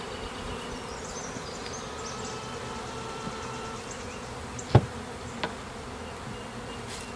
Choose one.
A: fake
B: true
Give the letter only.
B